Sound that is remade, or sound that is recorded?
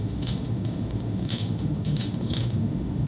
remade